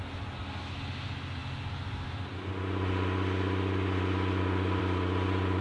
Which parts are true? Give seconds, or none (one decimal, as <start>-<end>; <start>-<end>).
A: 0.0-5.6